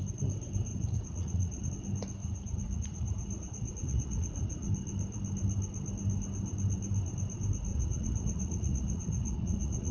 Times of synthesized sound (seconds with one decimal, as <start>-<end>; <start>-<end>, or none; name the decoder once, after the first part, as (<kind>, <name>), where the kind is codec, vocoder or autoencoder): 0.7-1.7 (vocoder, Vocos); 2.2-4.7; 7.7-9.9